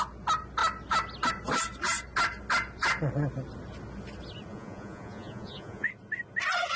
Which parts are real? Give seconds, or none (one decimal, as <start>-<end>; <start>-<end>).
0.0-4.5; 5.9-6.8

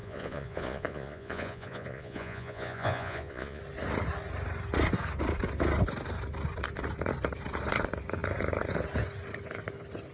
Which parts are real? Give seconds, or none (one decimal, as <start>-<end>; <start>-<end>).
3.6-10.1

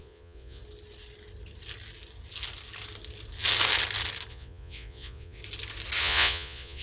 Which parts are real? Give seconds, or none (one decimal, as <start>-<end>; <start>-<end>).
0.6-4.3; 5.4-6.0

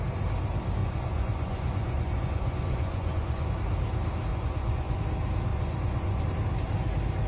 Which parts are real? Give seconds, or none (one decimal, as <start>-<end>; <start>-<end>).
0.0-0.8; 3.5-4.3; 5.0-5.5; 6.2-7.3

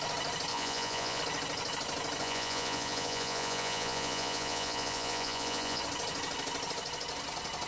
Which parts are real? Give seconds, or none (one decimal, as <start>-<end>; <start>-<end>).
0.0-0.5; 1.2-2.2; 5.8-7.7

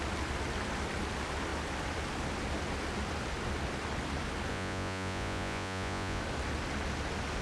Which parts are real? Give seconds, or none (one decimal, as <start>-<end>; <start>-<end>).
0.0-4.5; 6.2-7.4

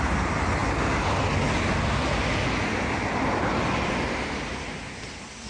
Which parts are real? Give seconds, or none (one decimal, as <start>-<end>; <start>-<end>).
0.0-5.5